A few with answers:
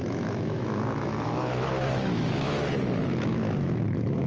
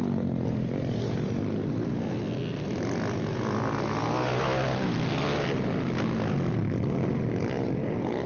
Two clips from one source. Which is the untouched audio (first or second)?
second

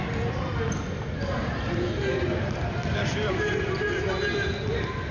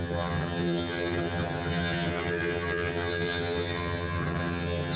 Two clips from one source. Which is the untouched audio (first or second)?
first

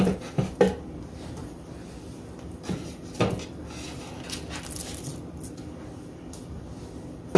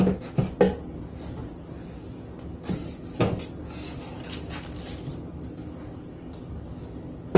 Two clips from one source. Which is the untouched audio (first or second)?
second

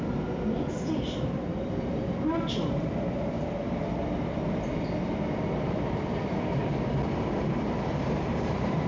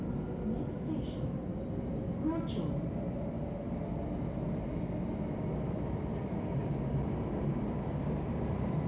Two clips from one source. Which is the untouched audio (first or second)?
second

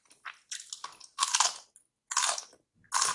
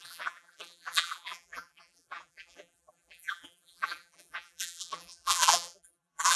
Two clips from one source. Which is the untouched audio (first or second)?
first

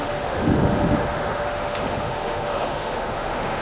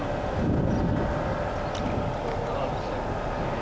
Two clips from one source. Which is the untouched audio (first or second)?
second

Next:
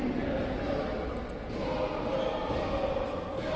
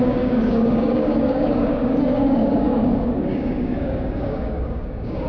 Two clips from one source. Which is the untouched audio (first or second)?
first